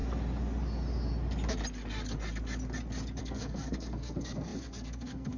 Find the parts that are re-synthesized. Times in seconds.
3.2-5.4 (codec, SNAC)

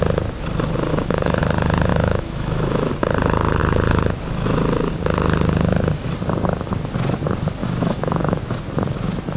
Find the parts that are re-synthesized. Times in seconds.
0.9-1.4 (autoencoder, DAC-VAE); 1.9-2.9; 7.6-8.4

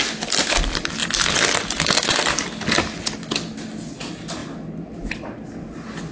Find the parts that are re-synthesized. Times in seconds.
none

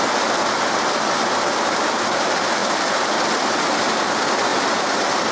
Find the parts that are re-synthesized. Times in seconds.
2.6-3.1 (vocoder, BigVGAN v2); 4.5-5.3

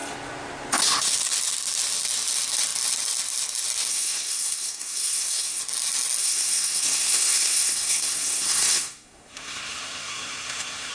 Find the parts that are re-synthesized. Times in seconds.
3.9-5.6 (codec, SNAC); 6.2-10.9

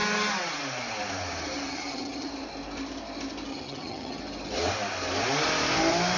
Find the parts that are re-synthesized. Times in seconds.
1.7-2.3 (vocoder, HiFi-GAN); 3.5-4.2

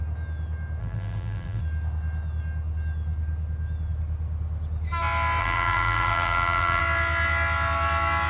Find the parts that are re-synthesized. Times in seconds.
0.8-1.6 (vocoder, BigVGAN v2); 5.4-6.8

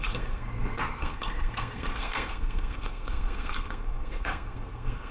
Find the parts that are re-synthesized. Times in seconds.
0.0-5.1 (codec, SNAC)